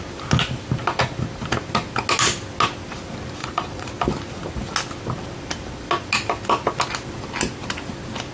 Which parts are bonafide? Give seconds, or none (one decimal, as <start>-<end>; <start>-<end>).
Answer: 0.0-3.4; 3.9-8.3